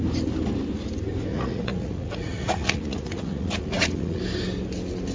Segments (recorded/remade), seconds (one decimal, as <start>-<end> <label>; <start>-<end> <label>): 0.0-1.3 recorded; 1.3-4.2 remade; 4.2-5.1 recorded

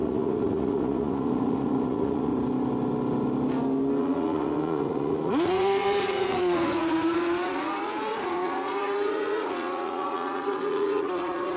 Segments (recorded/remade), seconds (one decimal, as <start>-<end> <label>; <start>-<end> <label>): 0.0-2.3 remade; 2.3-4.0 recorded; 4.0-11.6 remade

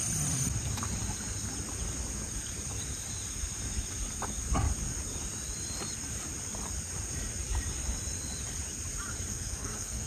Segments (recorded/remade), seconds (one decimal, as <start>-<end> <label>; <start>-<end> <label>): 0.0-9.3 recorded; 9.3-10.1 remade

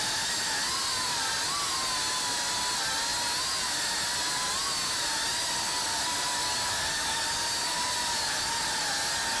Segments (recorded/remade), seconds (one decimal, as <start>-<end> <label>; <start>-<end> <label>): 0.0-9.4 recorded

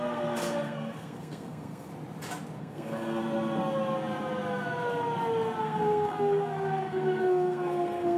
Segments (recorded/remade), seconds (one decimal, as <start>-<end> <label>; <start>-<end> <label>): 0.0-1.9 remade; 1.9-2.6 recorded; 2.6-3.2 remade; 3.2-5.6 recorded; 5.6-8.2 remade

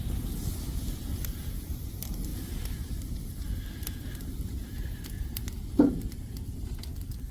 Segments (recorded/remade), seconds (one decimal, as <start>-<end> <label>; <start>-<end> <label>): 0.0-7.3 recorded

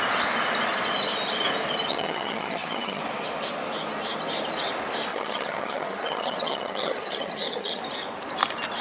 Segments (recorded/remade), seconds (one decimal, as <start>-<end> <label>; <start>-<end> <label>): 0.0-1.9 recorded; 1.9-3.0 remade; 3.0-5.1 recorded; 5.1-7.8 remade; 7.8-8.8 recorded